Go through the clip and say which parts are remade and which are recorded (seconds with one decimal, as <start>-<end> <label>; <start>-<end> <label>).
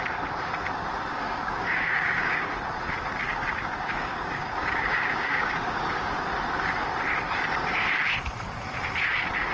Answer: 0.0-1.1 recorded; 1.1-2.5 remade; 2.5-3.2 recorded; 3.2-6.1 remade; 6.1-9.5 recorded